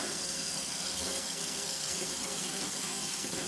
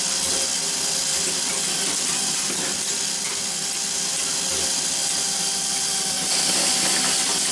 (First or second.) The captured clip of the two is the second